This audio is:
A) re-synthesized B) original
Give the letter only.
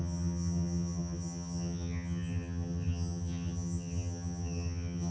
A